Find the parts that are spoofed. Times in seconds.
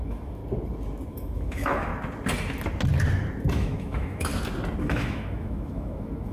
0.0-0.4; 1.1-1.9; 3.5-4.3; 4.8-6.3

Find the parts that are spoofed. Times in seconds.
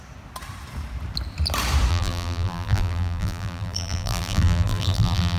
1.9-5.4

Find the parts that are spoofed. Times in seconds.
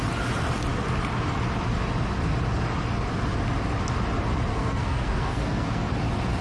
4.5-5.9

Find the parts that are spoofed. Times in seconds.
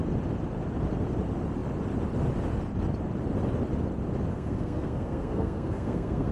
4.3-6.3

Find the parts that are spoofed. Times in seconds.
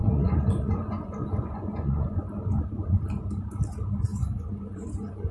0.0-3.0; 4.1-5.3